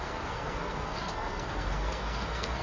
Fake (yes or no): yes